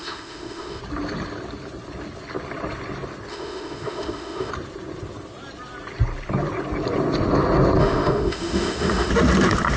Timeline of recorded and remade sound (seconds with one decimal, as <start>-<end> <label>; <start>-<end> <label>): 0.0-0.8 remade; 0.8-3.3 recorded; 3.3-4.5 remade; 4.5-7.8 recorded; 7.8-9.1 remade; 9.1-9.8 recorded